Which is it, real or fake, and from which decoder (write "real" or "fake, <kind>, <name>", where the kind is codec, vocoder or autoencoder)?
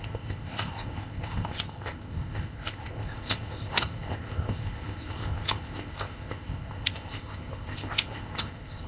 fake, codec, ZipCodec